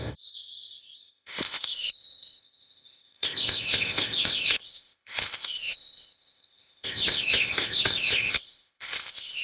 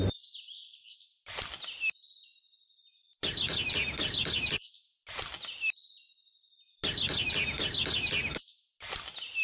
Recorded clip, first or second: second